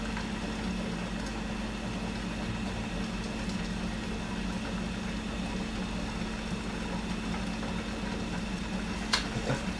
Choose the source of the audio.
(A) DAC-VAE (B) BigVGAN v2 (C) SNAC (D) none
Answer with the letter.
D